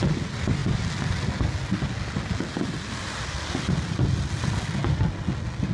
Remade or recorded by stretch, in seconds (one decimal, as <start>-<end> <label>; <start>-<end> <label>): 0.0-5.7 recorded